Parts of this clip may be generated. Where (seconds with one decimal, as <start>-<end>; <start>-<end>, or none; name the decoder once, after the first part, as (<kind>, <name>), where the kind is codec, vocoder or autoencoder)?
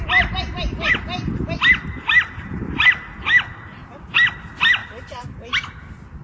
4.8-5.5 (vocoder, BigVGAN v2)